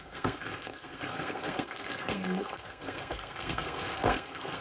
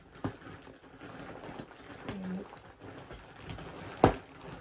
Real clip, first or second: second